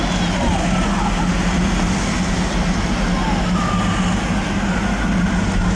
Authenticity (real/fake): real